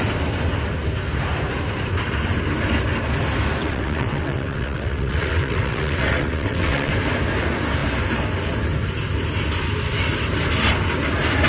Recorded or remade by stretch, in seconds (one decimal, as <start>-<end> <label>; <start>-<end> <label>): 0.0-3.6 recorded; 3.6-6.9 remade; 6.9-11.5 recorded